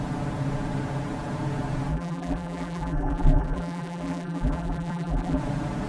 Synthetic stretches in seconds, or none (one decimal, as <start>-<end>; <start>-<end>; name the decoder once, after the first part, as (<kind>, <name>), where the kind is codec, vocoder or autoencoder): 1.9-5.4 (vocoder, BigVGAN v2)